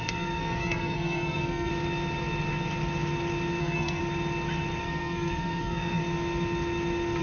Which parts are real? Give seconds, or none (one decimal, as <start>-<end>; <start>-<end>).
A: 1.7-3.6; 4.0-4.8; 6.0-7.2

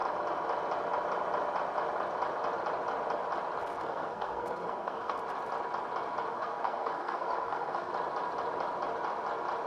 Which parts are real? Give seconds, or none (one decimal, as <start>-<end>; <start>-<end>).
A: 0.0-3.6; 5.2-6.3; 7.9-9.7

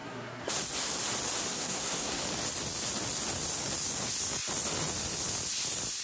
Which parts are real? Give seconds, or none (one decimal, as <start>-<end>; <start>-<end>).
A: 0.5-1.5; 2.2-6.0

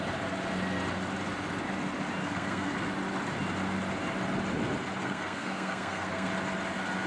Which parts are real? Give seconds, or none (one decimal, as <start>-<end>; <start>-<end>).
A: 0.0-2.2; 2.9-5.0; 6.3-7.1

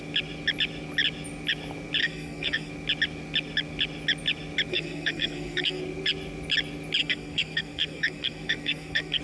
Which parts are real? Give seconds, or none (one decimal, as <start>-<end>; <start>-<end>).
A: 0.0-2.0; 2.7-4.7; 5.8-7.0

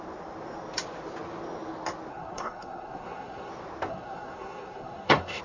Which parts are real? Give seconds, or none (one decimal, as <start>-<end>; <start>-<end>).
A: 0.0-2.1; 3.5-3.9

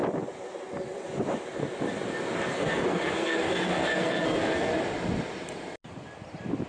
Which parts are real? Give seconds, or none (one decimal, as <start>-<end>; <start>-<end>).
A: 0.0-2.5; 4.7-6.7

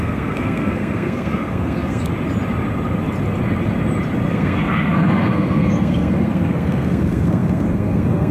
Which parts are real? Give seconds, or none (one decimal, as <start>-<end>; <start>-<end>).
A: 2.1-4.3